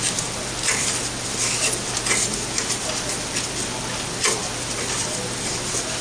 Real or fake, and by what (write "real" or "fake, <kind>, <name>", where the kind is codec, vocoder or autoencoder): real